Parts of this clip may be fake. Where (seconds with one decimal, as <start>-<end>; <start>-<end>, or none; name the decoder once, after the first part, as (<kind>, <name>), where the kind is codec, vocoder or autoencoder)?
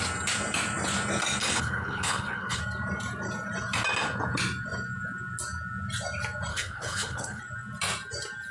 1.4-2.6 (codec, HILCodec); 6.5-7.4